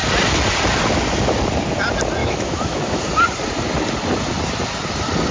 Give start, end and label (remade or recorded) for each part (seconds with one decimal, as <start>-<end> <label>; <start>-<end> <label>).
0.0-2.2 recorded; 2.2-3.0 remade; 3.0-5.3 recorded